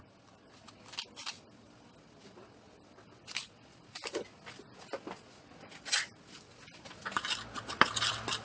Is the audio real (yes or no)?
yes